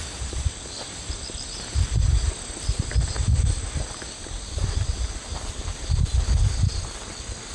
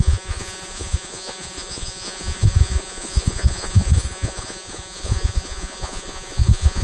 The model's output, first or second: second